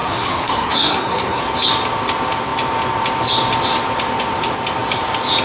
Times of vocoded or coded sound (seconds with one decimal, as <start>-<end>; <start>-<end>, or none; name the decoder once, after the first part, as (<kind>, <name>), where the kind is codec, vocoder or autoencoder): 0.0-1.4 (codec, SNAC)